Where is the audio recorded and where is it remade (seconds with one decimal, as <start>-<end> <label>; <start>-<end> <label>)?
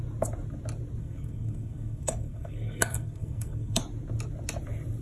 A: 0.0-1.0 recorded; 1.0-3.8 remade; 3.8-5.0 recorded